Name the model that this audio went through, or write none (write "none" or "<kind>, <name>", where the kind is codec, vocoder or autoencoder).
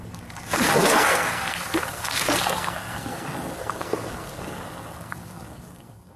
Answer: codec, SNAC